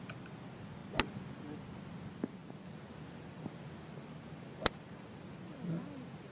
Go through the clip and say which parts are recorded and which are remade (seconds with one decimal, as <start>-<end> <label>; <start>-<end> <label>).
0.0-6.3 recorded